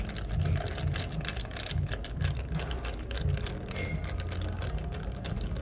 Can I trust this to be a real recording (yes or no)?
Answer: yes